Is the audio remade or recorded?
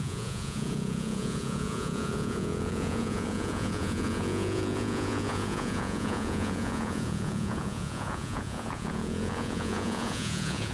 remade